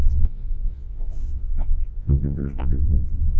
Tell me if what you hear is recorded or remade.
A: remade